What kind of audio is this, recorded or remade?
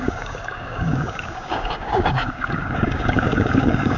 remade